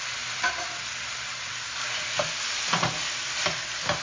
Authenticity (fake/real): real